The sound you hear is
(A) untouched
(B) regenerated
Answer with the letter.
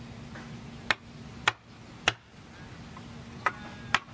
A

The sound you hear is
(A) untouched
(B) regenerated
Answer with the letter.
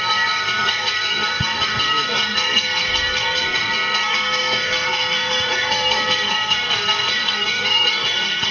B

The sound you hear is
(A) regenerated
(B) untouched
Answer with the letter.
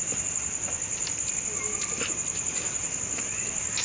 B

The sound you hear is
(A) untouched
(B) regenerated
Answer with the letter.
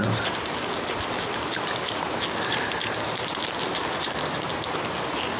A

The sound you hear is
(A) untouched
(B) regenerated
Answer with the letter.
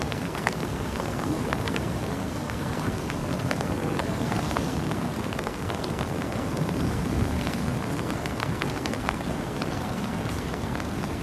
B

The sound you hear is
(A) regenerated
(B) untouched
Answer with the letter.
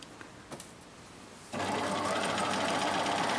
B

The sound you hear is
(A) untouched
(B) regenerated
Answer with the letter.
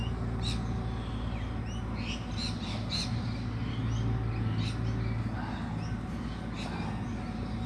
A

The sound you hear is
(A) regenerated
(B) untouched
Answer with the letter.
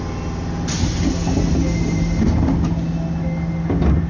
B